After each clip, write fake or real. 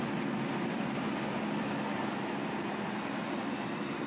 real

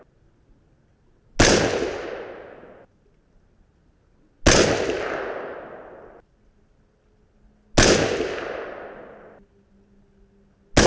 real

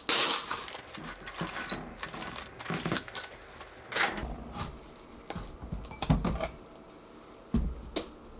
real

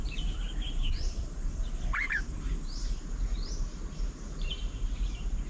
fake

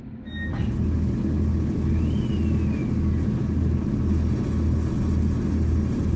real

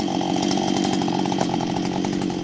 fake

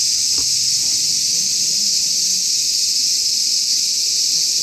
real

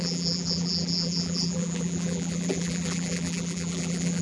fake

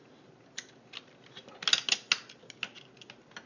real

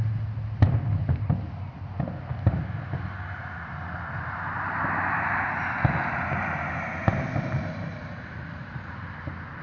real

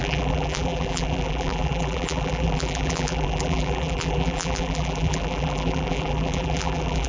fake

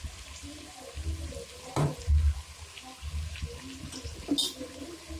real